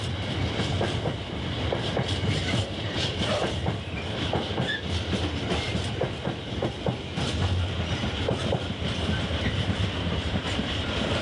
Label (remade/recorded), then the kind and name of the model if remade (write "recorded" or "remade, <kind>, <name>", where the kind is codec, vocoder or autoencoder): remade, vocoder, BigVGAN v2